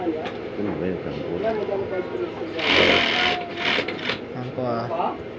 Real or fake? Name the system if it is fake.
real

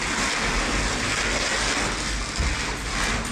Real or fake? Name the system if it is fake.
real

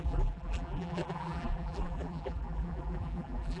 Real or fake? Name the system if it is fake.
fake, vocoder, BigVGAN v2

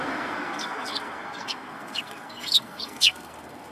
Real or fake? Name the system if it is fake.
fake, codec, SNAC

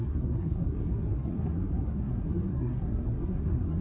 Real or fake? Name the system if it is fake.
fake, codec, SNAC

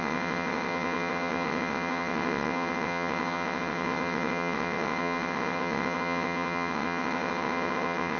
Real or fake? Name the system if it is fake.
fake, vocoder, WaveNeXt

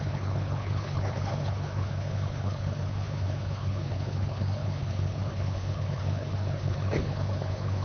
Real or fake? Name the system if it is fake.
fake, codec, HILCodec